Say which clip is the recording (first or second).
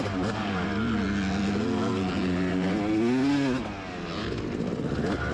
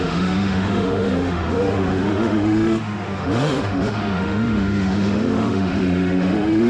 first